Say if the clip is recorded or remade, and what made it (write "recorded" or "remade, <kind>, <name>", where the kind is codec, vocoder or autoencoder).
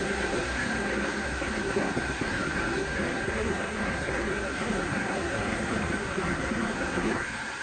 remade, codec, SNAC